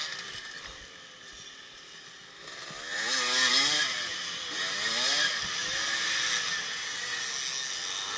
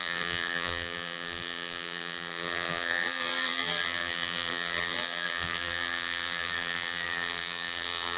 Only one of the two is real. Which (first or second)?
first